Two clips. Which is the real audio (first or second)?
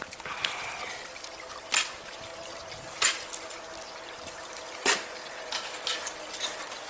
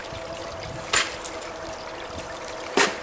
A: first